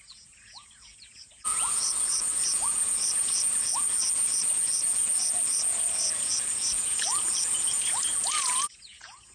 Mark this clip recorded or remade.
remade